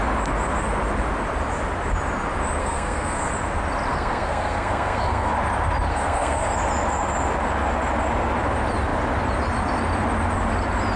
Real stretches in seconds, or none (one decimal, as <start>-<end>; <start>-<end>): 0.0-2.6; 3.3-3.9; 5.3-5.9; 6.5-11.0